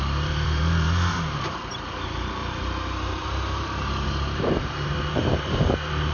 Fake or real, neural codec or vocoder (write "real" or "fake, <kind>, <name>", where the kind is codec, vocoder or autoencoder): fake, vocoder, BigVGAN v2